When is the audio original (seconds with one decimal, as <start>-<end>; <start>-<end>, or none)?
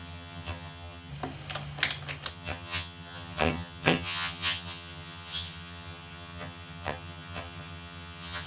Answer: 1.1-2.3